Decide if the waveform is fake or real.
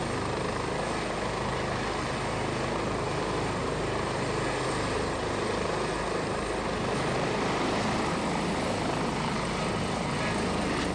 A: real